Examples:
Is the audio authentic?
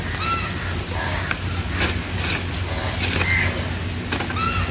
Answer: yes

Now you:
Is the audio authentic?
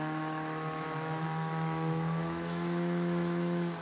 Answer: no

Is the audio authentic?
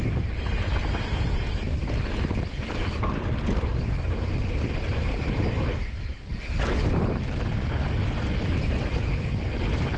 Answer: no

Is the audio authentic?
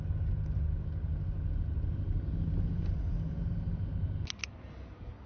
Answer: yes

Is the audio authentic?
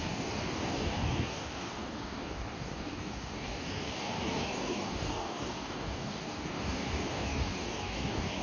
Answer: no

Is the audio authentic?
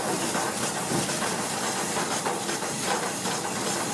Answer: yes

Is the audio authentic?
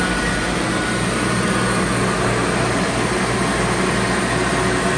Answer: yes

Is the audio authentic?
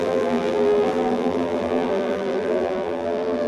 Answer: no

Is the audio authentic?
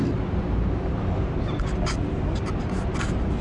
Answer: yes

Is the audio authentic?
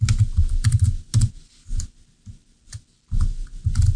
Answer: yes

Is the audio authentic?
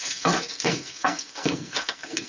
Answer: no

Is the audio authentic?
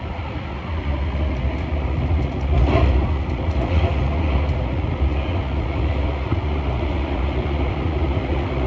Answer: no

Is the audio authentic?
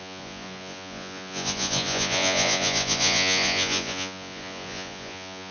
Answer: no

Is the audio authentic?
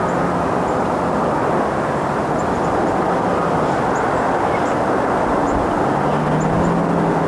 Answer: yes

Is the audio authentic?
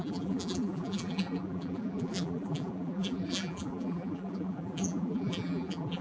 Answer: no